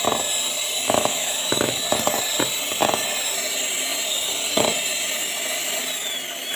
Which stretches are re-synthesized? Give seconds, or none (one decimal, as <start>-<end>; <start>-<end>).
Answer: 0.8-1.8